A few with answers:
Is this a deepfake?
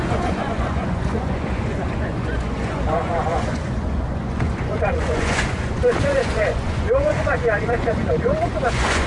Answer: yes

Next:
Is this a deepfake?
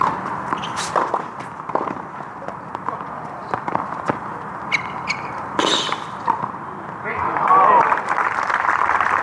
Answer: yes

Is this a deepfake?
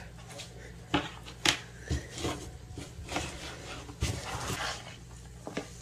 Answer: no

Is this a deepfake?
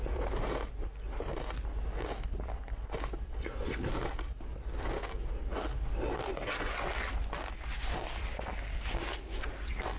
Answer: no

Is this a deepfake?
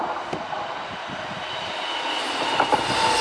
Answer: no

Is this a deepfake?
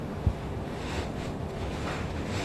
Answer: yes